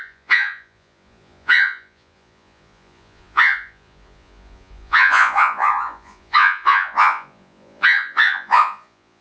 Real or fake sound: fake